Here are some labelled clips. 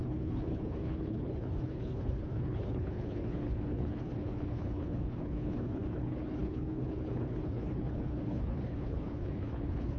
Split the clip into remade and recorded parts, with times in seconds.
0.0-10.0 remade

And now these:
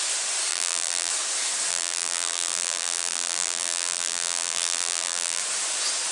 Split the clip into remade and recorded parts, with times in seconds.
0.0-0.5 recorded; 0.5-1.1 remade; 1.1-1.7 recorded; 1.7-5.4 remade; 5.4-6.1 recorded

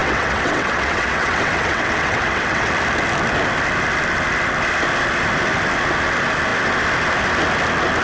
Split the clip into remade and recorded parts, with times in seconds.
0.0-2.7 remade; 2.7-8.0 recorded

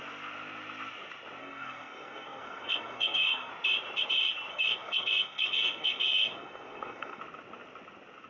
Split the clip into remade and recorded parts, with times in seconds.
0.0-1.4 recorded; 1.4-3.5 remade; 3.5-4.5 recorded; 4.5-7.2 remade; 7.2-8.3 recorded